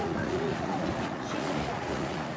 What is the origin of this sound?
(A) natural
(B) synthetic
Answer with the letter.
B